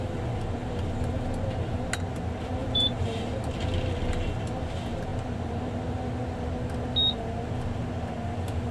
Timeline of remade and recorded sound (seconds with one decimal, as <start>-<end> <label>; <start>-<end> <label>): 0.0-2.6 recorded; 2.6-3.5 remade; 3.5-8.7 recorded